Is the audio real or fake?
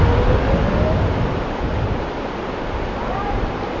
real